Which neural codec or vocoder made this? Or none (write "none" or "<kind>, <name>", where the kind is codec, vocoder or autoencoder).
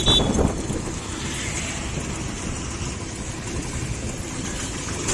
none